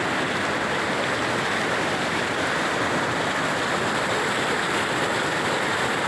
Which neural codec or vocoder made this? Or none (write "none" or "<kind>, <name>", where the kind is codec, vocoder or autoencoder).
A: none